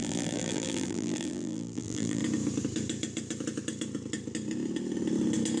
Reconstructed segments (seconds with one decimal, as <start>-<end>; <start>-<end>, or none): 0.0-2.2